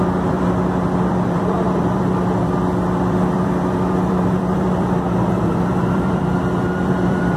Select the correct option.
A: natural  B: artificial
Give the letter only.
B